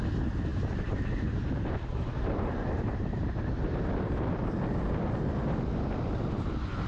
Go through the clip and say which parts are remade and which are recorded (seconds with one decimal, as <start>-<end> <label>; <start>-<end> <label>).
0.0-0.5 recorded; 0.5-4.3 remade; 4.3-6.9 recorded

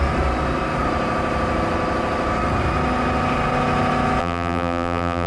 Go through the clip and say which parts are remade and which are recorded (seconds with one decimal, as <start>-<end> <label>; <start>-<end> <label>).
0.0-4.2 recorded; 4.2-5.3 remade

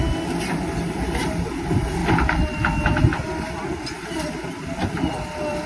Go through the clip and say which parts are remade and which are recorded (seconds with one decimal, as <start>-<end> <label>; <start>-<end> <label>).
0.0-5.7 recorded

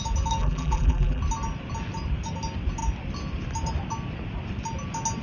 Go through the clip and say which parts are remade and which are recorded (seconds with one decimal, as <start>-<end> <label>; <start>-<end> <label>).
0.0-0.4 recorded; 0.4-1.2 remade; 1.2-5.2 recorded

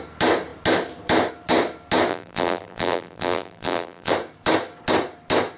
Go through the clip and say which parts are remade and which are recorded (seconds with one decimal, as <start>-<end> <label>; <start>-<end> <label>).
0.0-2.1 recorded; 2.1-4.1 remade; 4.1-5.6 recorded